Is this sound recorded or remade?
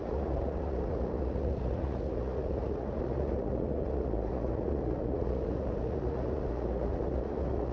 remade